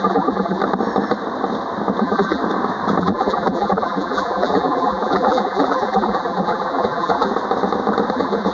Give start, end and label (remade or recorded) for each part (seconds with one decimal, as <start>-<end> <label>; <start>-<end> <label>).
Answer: 0.0-0.6 remade; 0.6-2.0 recorded; 2.0-2.4 remade; 2.4-3.0 recorded; 3.0-7.3 remade; 7.3-8.1 recorded; 8.1-8.5 remade